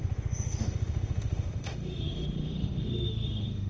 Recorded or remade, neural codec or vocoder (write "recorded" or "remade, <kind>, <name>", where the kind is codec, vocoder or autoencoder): remade, autoencoder, DAC-VAE